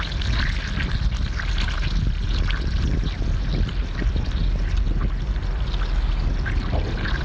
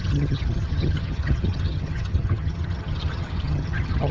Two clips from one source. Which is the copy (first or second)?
second